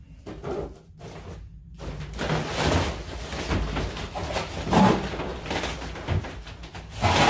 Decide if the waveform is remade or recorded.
recorded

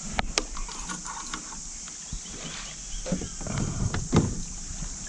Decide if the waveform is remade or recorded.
recorded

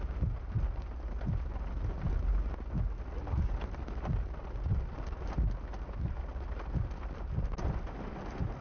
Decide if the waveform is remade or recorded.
recorded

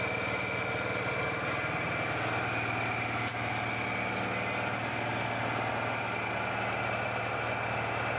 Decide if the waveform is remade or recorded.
recorded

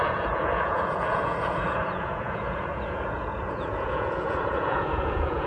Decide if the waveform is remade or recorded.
remade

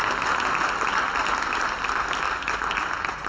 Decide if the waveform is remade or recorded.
recorded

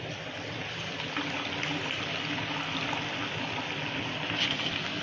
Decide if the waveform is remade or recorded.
recorded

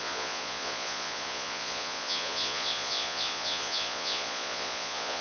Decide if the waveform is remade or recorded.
remade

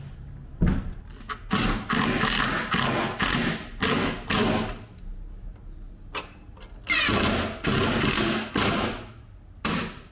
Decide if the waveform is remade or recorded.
recorded